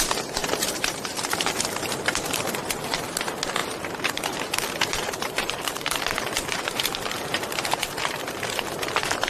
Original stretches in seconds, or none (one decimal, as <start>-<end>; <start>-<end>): 0.0-0.4; 2.5-3.6; 8.2-9.3